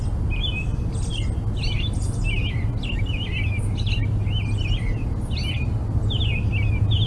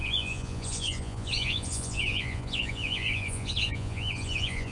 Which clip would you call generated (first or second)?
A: second